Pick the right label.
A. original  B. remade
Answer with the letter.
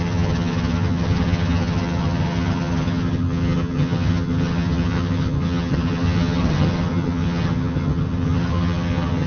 B